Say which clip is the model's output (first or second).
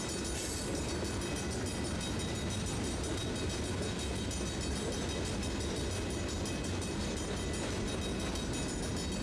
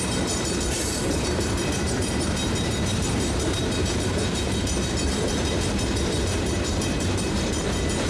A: second